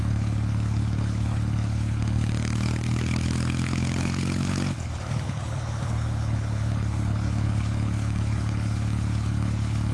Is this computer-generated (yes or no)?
yes